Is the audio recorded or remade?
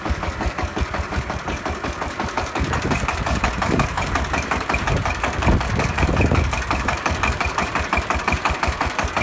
remade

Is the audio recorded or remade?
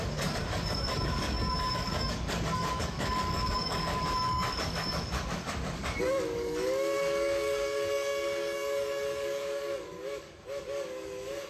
remade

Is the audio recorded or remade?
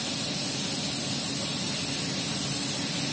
recorded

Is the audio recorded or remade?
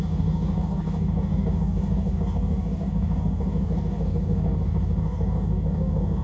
remade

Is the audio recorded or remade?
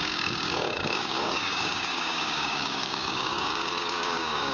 remade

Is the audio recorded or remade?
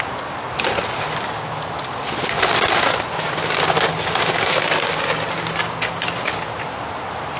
recorded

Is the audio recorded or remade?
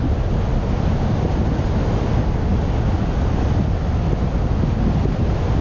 recorded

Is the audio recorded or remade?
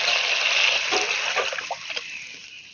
recorded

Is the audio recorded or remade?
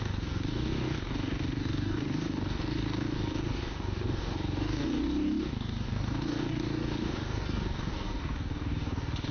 remade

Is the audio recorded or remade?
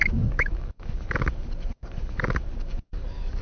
remade